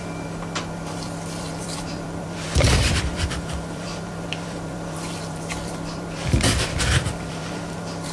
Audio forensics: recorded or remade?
remade